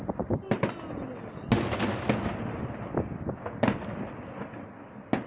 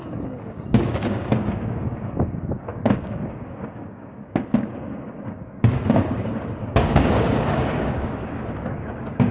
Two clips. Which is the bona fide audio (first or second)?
first